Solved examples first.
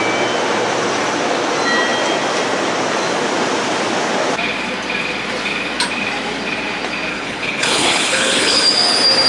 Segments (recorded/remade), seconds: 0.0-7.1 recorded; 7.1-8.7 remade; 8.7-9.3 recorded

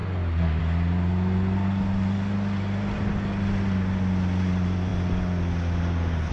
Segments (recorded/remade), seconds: 0.0-6.3 recorded

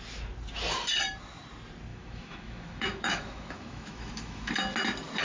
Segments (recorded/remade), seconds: 0.0-1.9 recorded; 1.9-4.5 remade; 4.5-5.2 recorded

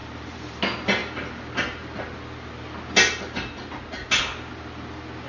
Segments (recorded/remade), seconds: 0.0-0.6 remade; 0.6-5.3 recorded

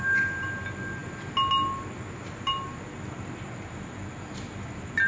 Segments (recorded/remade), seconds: 0.0-5.1 recorded

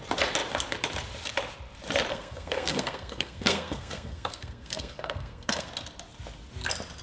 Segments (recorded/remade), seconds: 0.0-2.1 recorded; 2.1-5.7 remade; 5.7-7.0 recorded